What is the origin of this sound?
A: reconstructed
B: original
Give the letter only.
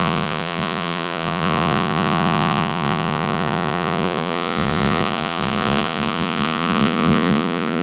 A